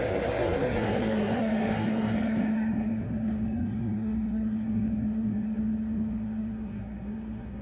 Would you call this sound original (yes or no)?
no